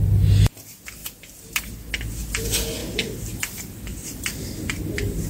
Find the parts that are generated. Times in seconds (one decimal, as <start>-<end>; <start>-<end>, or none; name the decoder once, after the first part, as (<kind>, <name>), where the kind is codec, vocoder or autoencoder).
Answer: none